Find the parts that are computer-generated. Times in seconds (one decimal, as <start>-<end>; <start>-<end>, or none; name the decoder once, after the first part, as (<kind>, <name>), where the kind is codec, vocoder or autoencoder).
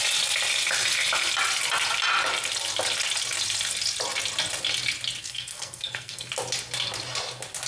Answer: 5.2-6.3 (codec, SNAC)